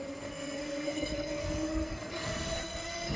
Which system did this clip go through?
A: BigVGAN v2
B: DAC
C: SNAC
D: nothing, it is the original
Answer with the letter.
C